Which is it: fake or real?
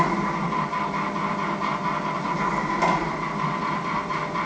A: real